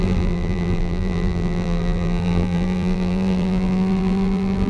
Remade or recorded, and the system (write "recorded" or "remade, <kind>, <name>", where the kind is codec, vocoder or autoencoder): remade, vocoder, BigVGAN v2